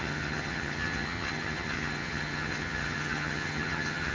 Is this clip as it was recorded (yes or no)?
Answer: no